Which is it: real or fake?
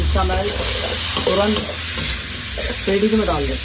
real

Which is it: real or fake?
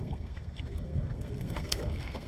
fake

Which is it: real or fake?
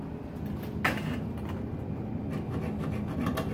real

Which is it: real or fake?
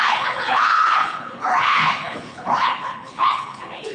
fake